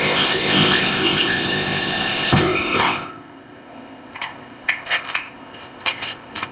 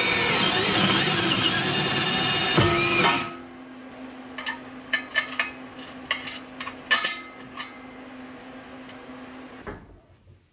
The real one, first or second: second